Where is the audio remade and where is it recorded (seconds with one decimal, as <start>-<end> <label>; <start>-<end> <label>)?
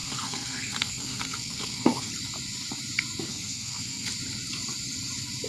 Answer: 0.0-2.1 remade; 2.1-3.3 recorded; 3.3-4.1 remade; 4.1-5.5 recorded